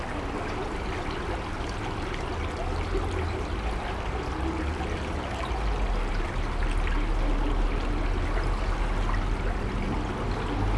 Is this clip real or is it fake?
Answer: real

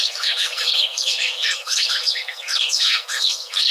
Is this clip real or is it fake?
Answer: fake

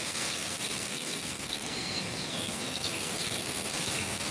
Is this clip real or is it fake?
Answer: fake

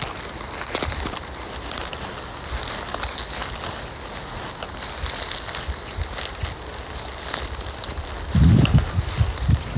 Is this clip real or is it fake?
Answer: real